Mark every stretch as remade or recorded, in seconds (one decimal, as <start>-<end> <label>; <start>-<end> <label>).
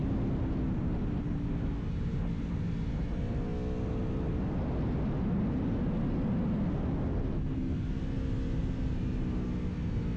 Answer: 0.0-10.2 recorded